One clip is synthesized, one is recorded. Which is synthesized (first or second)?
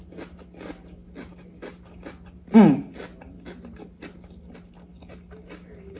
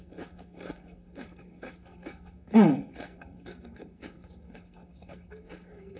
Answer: second